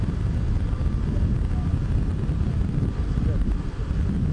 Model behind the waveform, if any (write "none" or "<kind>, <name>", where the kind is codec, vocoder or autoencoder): none